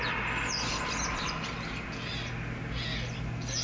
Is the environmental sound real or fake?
real